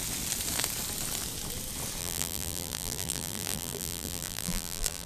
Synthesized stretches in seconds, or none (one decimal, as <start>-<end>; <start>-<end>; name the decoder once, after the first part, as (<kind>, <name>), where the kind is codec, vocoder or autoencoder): 2.0-5.1 (vocoder, BigVGAN v2)